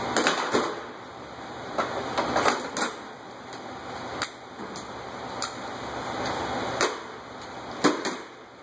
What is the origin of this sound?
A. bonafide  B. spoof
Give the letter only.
A